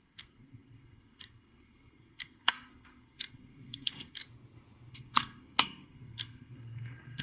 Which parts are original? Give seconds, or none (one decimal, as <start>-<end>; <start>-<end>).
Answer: 4.2-4.9